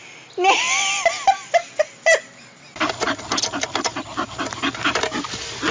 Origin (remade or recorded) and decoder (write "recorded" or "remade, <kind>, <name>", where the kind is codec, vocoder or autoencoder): recorded